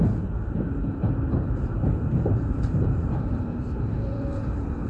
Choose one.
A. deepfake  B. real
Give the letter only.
A